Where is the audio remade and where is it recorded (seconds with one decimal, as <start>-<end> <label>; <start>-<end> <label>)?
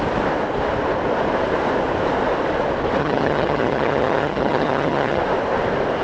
0.0-3.0 recorded; 3.0-5.2 remade; 5.2-6.0 recorded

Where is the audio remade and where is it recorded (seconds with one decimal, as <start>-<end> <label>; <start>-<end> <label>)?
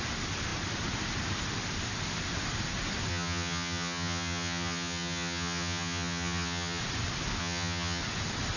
0.0-3.1 recorded; 3.1-6.8 remade; 6.8-7.4 recorded; 7.4-8.0 remade; 8.0-8.6 recorded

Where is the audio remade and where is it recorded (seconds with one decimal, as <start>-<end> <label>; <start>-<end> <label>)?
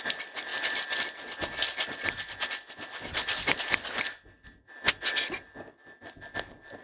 0.0-6.8 recorded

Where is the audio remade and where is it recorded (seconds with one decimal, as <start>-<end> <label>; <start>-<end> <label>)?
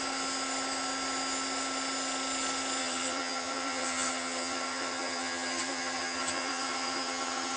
0.0-2.8 recorded; 2.8-7.6 remade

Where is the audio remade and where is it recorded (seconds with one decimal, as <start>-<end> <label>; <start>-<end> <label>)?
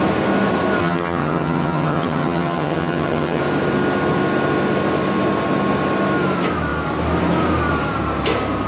0.0-0.8 recorded; 0.8-3.4 remade; 3.4-8.7 recorded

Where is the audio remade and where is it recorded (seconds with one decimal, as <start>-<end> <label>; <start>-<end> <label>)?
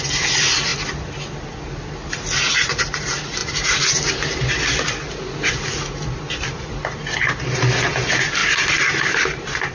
0.0-9.7 recorded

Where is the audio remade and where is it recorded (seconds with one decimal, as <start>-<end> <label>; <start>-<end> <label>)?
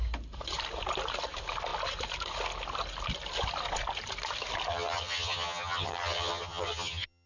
0.0-4.7 recorded; 4.7-7.3 remade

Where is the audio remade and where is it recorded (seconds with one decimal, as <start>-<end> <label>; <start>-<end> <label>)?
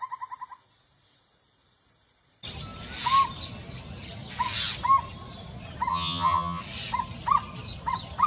0.0-5.9 recorded; 5.9-6.6 remade; 6.6-8.3 recorded